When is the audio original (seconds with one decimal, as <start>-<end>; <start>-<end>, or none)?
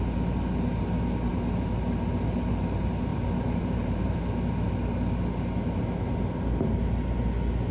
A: 0.0-1.3; 1.8-3.1; 4.2-7.7